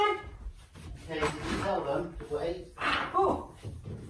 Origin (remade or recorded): recorded